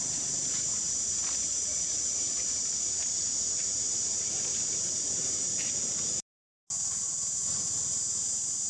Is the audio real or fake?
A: real